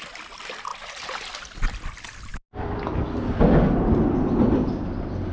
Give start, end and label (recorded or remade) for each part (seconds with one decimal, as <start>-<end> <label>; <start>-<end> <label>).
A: 0.0-5.3 recorded